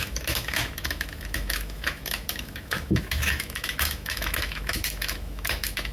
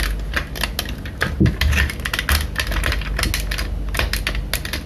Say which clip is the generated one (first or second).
first